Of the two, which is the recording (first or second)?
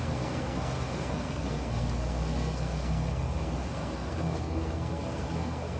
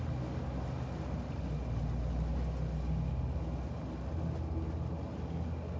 second